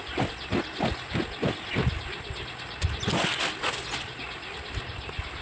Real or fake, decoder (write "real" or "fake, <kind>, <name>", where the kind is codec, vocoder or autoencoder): real